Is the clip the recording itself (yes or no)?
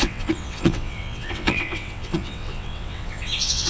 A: no